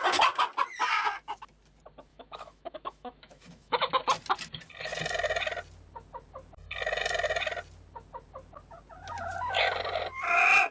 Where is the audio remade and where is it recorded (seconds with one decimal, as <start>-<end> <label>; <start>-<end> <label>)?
0.0-2.1 recorded; 2.1-3.9 remade; 3.9-10.7 recorded